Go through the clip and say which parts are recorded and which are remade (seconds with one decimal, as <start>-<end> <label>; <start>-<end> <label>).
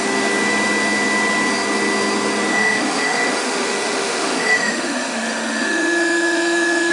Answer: 0.0-2.5 recorded; 2.5-6.9 remade